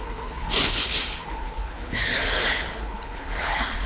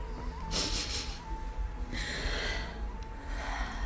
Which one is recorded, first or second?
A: second